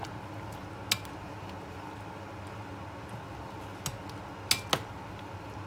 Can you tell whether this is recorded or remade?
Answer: recorded